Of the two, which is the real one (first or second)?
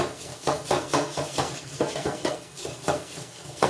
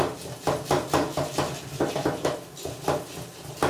second